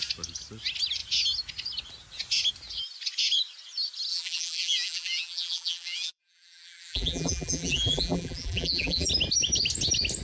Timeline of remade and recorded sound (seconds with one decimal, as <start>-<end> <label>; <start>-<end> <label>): 0.0-4.1 recorded; 4.1-9.1 remade; 9.1-10.2 recorded